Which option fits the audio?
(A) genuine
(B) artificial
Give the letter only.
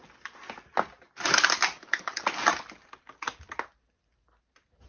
A